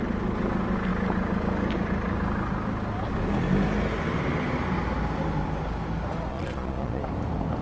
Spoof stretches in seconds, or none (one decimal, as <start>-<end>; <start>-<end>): 6.3-7.0